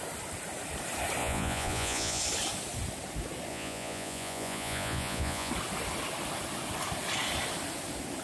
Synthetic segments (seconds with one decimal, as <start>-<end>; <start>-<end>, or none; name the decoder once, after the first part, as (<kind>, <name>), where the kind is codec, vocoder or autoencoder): 1.2-2.2 (vocoder, Vocos); 3.5-5.5